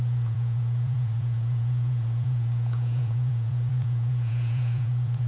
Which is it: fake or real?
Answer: fake